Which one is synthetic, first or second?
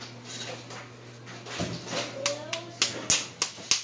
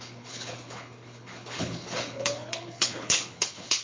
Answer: second